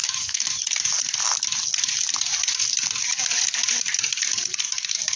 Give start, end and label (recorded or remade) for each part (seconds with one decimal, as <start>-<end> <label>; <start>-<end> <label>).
0.0-0.5 remade; 0.5-5.2 recorded